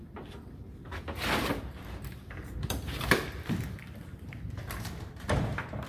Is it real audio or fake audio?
fake